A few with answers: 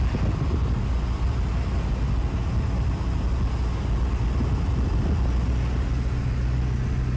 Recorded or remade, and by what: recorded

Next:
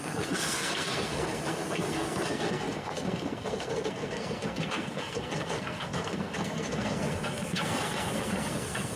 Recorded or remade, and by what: remade, codec, SNAC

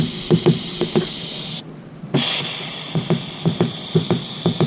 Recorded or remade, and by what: recorded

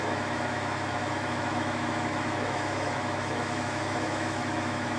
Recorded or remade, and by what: remade, autoencoder, DAC-VAE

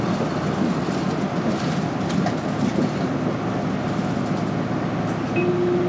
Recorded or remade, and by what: recorded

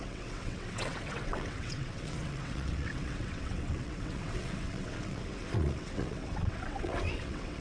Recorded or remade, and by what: remade, vocoder, WaveNeXt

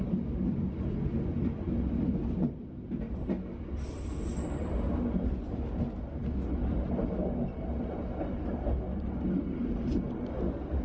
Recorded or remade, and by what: recorded